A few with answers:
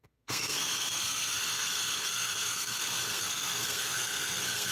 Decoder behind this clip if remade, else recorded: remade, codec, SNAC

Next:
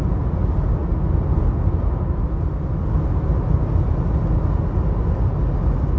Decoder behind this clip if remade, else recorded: recorded